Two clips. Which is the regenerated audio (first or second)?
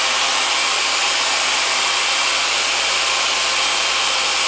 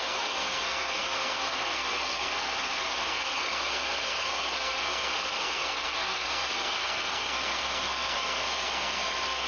second